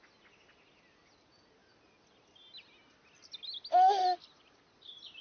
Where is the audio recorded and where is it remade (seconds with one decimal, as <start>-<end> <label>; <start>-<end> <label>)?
0.0-5.2 recorded